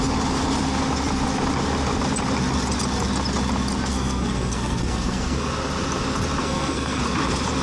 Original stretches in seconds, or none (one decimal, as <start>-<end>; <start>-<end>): 0.0-3.9; 5.5-6.4; 7.0-7.6